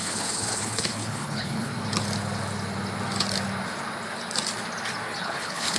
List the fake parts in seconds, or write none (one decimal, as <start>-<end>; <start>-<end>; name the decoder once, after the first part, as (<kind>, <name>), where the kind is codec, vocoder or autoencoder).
0.0-1.7 (codec, HILCodec); 5.2-5.8